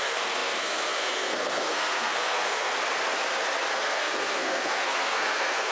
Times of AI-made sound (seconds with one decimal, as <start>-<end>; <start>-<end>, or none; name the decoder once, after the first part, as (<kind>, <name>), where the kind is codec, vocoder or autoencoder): 0.0-2.7 (codec, SNAC); 3.7-5.7